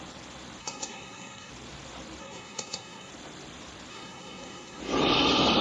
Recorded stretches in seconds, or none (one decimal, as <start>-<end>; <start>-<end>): 0.0-0.6; 1.5-2.2; 3.1-3.9; 4.8-5.6